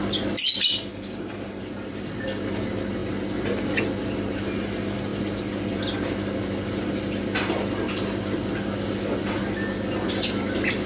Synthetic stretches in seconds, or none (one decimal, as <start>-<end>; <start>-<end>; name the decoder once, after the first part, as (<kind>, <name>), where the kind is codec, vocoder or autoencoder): 0.9-1.6 (codec, DAC)